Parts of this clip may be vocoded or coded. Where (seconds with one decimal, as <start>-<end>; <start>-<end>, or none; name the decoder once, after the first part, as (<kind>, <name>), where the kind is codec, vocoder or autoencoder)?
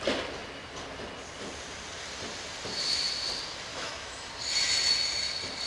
3.7-4.3 (autoencoder, DAC-VAE)